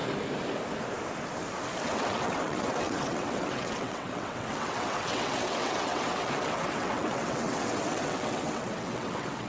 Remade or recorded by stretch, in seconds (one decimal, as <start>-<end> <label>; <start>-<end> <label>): 0.0-1.8 recorded; 1.8-9.5 remade